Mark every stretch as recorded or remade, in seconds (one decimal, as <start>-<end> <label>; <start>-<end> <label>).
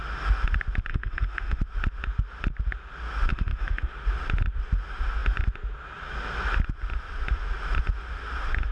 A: 0.0-0.9 recorded; 0.9-1.6 remade; 1.6-3.3 recorded; 3.3-3.9 remade; 3.9-8.7 recorded